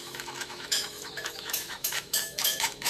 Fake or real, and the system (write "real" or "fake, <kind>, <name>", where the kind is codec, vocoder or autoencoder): fake, autoencoder, DAC-VAE